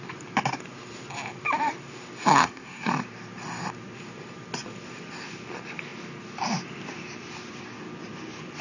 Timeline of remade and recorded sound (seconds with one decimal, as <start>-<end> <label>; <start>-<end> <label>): 0.0-2.3 recorded; 2.3-2.9 remade; 2.9-8.6 recorded